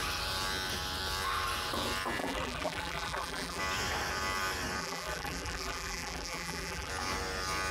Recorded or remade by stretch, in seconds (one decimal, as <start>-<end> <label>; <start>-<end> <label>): 0.0-2.2 recorded; 2.2-3.6 remade; 3.6-4.8 recorded; 4.8-6.9 remade; 6.9-7.7 recorded